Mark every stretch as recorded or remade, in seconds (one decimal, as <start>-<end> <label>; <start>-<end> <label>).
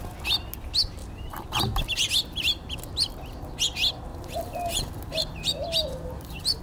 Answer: 0.0-1.0 recorded; 1.0-1.8 remade; 1.8-4.1 recorded; 4.1-6.6 remade